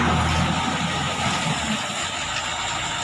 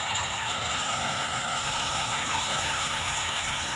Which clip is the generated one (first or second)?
second